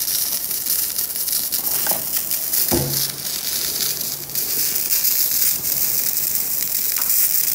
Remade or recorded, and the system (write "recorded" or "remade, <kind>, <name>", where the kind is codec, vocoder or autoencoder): recorded